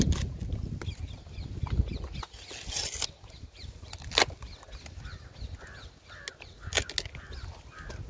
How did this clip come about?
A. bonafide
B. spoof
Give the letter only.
A